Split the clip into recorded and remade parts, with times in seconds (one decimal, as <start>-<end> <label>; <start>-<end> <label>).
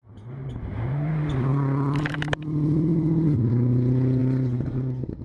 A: 0.0-1.5 recorded; 1.5-3.5 remade; 3.5-4.2 recorded; 4.2-5.2 remade